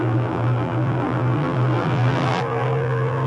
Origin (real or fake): fake